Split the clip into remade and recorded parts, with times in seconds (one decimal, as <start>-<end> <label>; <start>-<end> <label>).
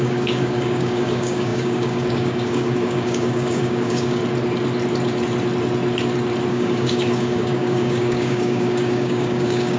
0.0-4.2 remade; 4.2-6.5 recorded; 6.5-9.8 remade